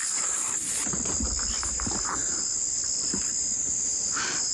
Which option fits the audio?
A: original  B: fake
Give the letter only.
A